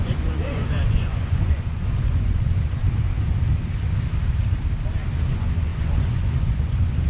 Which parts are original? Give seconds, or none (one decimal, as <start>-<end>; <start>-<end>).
2.8-5.3